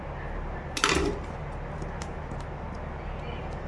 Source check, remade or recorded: recorded